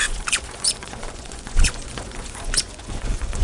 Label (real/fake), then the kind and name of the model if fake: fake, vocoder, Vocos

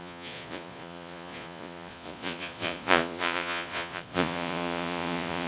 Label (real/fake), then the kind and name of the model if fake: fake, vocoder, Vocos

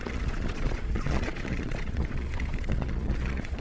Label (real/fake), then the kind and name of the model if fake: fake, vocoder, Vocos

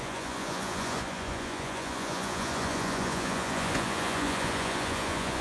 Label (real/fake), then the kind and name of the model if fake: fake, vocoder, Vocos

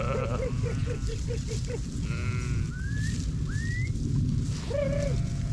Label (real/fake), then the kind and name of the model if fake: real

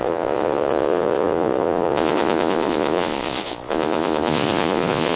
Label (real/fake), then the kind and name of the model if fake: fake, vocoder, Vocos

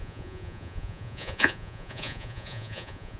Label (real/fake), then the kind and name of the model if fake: fake, vocoder, Vocos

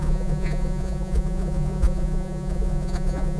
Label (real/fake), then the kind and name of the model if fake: fake, vocoder, Vocos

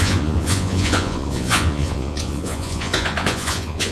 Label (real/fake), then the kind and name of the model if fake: fake, vocoder, Vocos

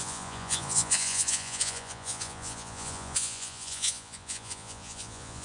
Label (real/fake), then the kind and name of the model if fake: fake, vocoder, Vocos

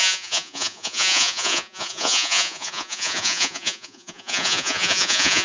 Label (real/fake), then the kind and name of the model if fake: fake, vocoder, Vocos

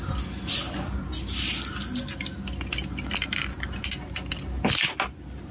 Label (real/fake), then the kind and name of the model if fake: real